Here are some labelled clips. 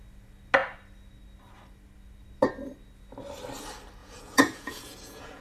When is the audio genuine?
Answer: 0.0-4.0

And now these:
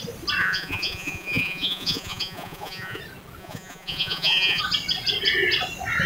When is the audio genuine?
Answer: 0.0-0.4; 3.0-3.4; 4.6-6.1

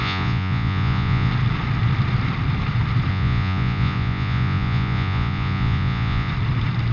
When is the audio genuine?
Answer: 1.3-3.1; 6.3-6.9